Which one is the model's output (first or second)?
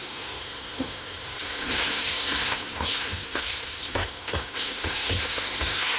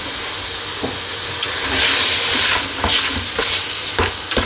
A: first